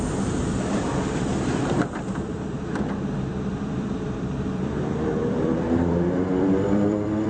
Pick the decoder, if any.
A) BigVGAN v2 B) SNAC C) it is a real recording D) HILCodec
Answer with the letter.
A